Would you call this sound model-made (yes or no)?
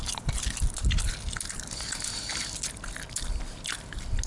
no